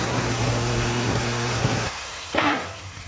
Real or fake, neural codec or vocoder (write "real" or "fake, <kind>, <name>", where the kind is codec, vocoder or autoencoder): fake, codec, SNAC